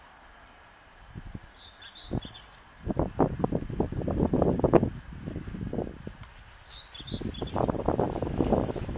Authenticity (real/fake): real